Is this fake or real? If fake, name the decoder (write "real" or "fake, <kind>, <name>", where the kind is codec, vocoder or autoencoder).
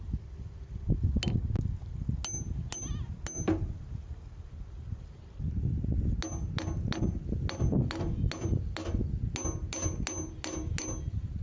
real